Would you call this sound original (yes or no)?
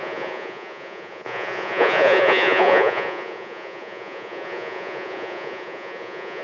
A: no